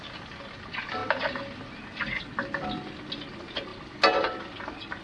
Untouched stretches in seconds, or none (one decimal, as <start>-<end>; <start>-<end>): 0.0-5.0